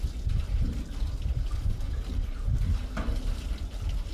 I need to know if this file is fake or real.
real